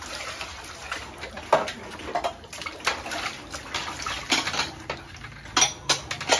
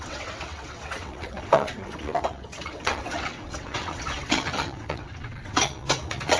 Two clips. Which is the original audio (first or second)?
first